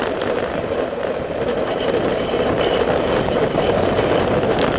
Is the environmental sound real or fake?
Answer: fake